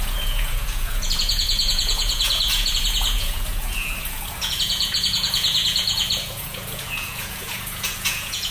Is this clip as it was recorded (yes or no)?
no